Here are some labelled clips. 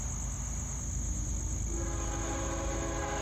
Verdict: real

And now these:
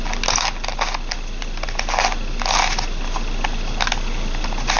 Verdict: real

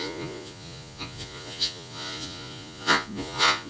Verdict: fake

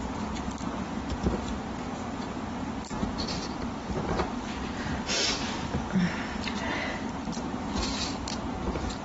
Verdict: real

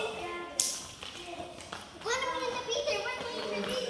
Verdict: real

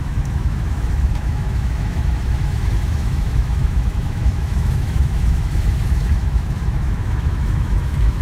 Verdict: fake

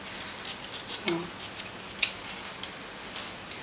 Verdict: real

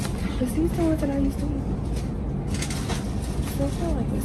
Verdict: real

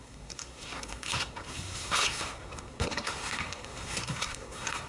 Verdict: fake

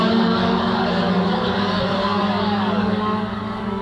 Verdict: fake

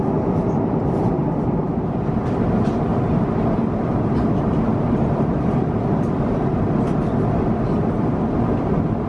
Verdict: fake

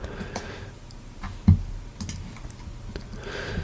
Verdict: real